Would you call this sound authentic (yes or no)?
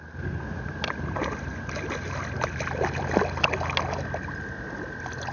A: yes